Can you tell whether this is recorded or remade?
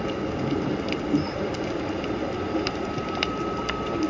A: remade